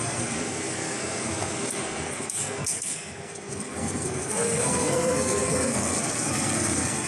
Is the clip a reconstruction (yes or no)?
yes